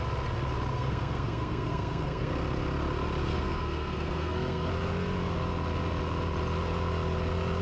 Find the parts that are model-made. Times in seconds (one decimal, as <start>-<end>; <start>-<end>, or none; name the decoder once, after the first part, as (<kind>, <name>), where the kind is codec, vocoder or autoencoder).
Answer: 0.7-2.3 (codec, SNAC); 3.3-4.7